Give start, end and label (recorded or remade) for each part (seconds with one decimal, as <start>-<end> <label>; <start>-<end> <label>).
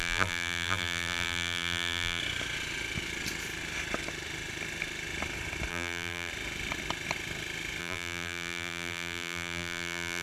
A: 0.0-2.2 remade; 2.2-5.7 recorded; 5.7-6.3 remade; 6.3-7.8 recorded; 7.8-10.2 remade